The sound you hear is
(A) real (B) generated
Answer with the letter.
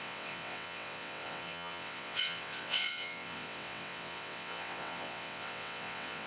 B